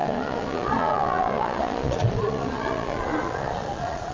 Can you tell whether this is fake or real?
fake